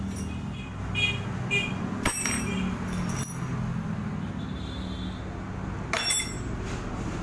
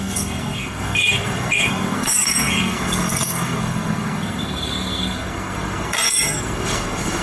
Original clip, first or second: first